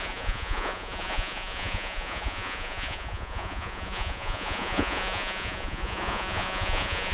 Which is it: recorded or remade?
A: remade